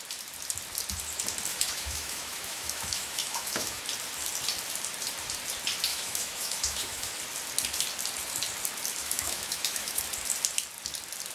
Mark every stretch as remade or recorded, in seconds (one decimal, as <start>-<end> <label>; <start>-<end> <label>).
0.0-1.5 recorded; 1.5-3.8 remade; 3.8-5.9 recorded; 5.9-7.1 remade; 7.1-9.0 recorded; 9.0-10.0 remade; 10.0-11.3 recorded